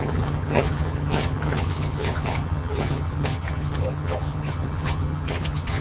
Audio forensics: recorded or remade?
remade